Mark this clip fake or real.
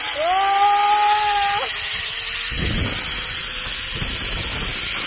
real